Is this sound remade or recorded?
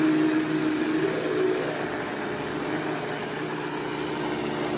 recorded